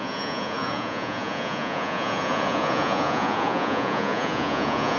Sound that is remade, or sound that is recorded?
remade